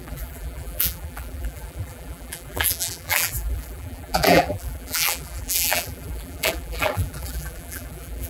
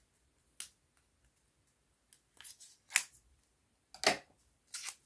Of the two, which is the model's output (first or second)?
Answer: first